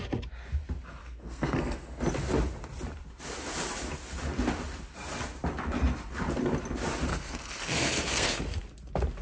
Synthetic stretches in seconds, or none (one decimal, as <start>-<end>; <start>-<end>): 1.0-2.0; 7.1-8.4